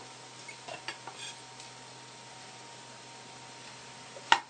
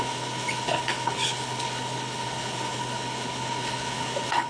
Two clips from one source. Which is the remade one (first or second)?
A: second